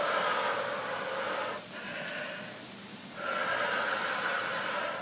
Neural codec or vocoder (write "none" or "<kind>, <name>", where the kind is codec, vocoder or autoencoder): none